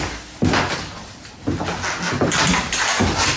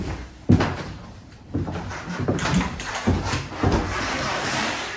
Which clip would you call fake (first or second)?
second